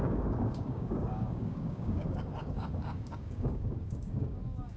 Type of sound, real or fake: fake